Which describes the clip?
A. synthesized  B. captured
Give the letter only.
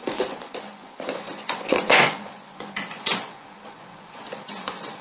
A